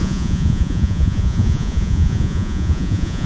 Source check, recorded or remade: remade